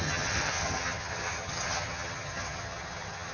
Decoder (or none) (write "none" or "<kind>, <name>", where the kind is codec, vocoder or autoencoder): vocoder, HiFi-GAN